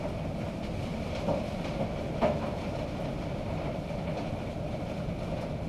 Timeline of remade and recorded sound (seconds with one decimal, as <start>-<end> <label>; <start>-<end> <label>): 0.0-0.9 recorded; 0.9-4.3 remade; 4.3-5.7 recorded